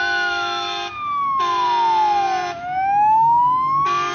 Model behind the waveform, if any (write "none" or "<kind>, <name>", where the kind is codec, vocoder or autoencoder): none